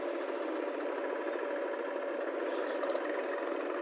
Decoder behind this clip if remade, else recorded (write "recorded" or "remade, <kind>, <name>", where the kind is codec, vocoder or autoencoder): recorded